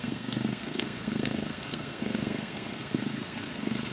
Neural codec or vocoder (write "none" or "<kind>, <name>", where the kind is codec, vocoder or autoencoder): codec, SNAC